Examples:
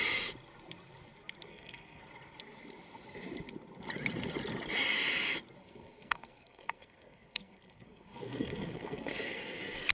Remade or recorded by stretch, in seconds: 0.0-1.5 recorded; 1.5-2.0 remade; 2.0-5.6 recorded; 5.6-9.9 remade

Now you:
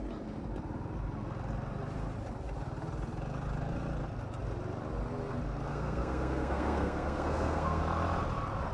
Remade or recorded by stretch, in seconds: 0.0-5.7 recorded; 5.7-7.8 remade; 7.8-8.7 recorded

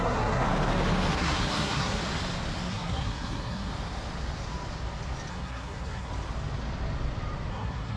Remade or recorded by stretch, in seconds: 0.0-0.5 remade; 0.5-1.1 recorded; 1.1-2.0 remade; 2.0-2.7 recorded; 2.7-3.7 remade; 3.7-5.3 recorded; 5.3-6.1 remade; 6.1-7.5 recorded; 7.5-8.0 remade

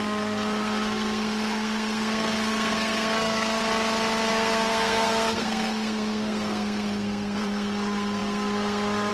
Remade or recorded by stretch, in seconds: 0.0-3.6 remade; 3.6-4.3 recorded; 4.3-9.1 remade

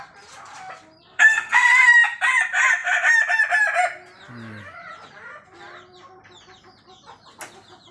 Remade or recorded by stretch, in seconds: 0.0-1.1 recorded; 1.1-1.9 remade; 1.9-7.9 recorded